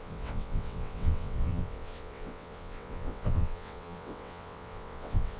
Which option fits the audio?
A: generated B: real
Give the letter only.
A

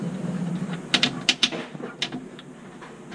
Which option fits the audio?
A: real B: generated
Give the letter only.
A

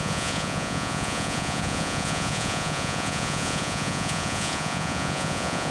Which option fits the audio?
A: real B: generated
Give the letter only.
B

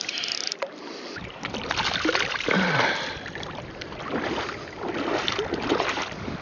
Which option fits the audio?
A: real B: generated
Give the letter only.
B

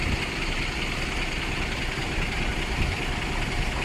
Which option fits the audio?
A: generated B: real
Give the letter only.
B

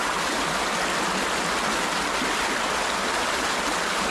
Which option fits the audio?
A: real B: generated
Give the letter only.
A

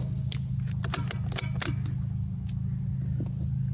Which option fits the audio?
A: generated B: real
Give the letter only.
B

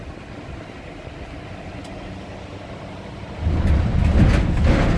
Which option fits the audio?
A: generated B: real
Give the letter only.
B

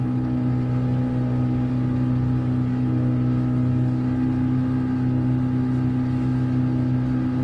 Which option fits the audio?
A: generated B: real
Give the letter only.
B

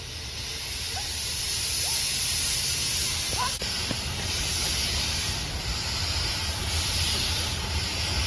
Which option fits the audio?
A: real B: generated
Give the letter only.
A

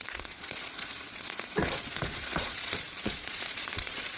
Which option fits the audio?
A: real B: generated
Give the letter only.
B